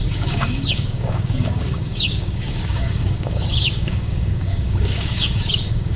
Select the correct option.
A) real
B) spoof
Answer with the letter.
B